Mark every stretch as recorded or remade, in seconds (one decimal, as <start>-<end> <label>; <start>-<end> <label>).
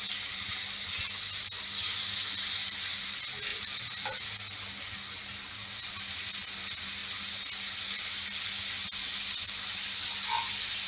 0.0-10.9 recorded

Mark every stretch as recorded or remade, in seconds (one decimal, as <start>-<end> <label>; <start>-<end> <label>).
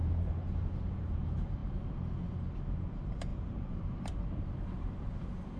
0.0-1.6 remade; 1.6-2.8 recorded; 2.8-5.6 remade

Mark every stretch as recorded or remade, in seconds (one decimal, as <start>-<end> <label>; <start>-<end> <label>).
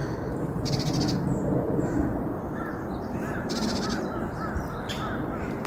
0.0-1.0 remade; 1.0-1.5 recorded; 1.5-4.0 remade; 4.0-5.7 recorded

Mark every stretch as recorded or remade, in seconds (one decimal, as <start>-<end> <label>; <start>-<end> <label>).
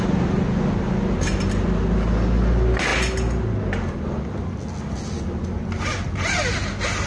0.0-7.1 recorded